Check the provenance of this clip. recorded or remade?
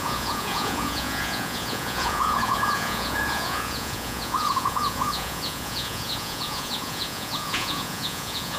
remade